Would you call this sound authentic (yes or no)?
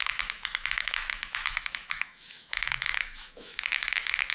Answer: no